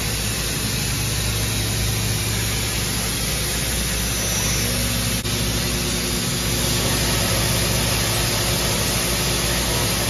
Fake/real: real